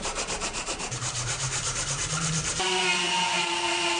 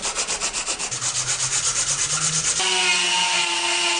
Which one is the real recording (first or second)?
second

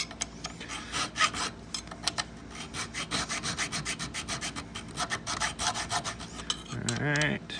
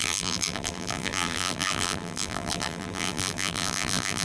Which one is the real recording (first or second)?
first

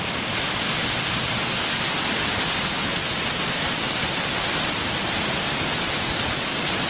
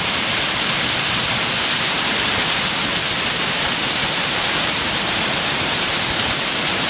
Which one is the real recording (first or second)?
first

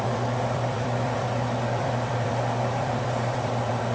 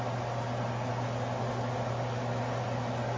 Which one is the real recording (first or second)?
second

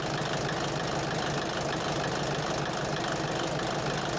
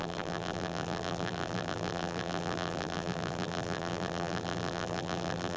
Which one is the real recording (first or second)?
first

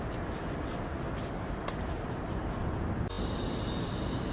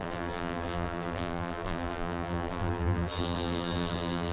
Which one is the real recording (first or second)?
first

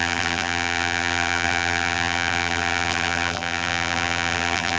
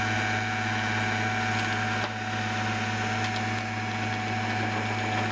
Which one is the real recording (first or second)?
second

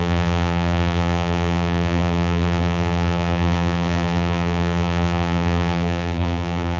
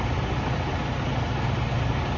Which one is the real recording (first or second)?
second